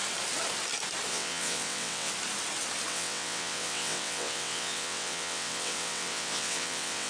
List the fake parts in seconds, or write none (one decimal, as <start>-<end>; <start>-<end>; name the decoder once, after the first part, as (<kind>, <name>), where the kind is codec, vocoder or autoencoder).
1.1-2.1 (vocoder, WaveNeXt); 2.9-7.1